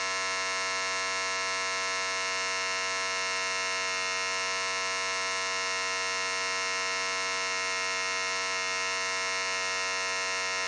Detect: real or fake real